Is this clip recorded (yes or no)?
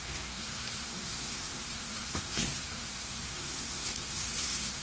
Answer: no